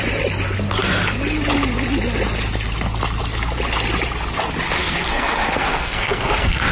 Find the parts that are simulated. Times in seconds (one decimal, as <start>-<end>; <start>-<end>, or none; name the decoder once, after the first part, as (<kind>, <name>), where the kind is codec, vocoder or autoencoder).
4.8-6.7 (codec, SNAC)